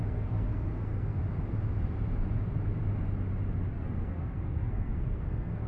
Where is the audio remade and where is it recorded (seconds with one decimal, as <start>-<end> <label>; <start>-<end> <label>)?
0.0-1.2 remade; 1.2-3.7 recorded; 3.7-5.7 remade